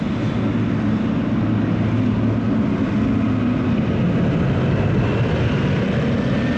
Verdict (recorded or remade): recorded